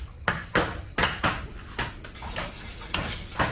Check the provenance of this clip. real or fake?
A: real